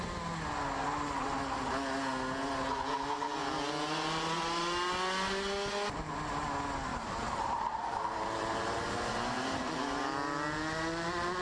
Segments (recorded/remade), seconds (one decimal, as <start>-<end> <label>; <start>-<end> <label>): 0.0-6.9 recorded; 6.9-9.8 remade; 9.8-11.4 recorded